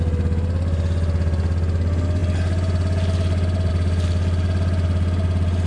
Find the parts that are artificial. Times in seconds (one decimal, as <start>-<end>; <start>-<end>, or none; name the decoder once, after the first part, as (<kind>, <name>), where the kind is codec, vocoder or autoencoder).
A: none